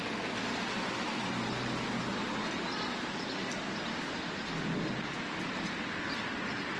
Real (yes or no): yes